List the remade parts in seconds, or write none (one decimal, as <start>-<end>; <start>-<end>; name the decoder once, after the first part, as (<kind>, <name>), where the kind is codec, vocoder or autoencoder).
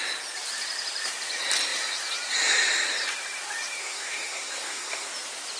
3.8-5.1 (codec, SNAC)